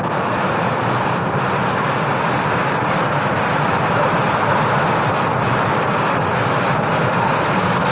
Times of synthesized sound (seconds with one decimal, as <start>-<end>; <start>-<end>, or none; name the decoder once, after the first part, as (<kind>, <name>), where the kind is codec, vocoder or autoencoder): 0.0-7.9 (vocoder, BigVGAN v2)